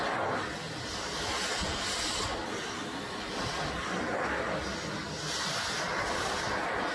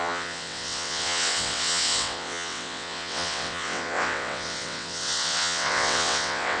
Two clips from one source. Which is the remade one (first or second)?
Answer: second